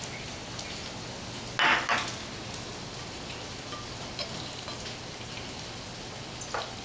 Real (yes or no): yes